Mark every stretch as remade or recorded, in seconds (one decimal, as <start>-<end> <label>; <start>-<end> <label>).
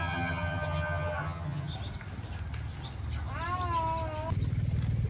0.0-1.7 remade; 1.7-5.1 recorded